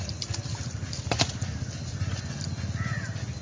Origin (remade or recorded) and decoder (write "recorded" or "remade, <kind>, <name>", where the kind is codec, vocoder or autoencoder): recorded